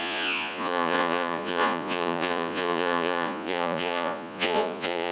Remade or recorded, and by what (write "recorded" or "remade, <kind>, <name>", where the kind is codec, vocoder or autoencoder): remade, vocoder, Vocos